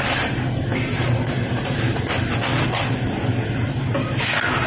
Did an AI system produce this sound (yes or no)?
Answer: no